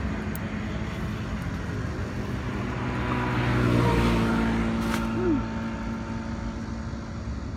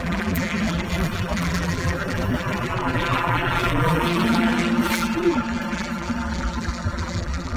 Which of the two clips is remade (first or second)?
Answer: second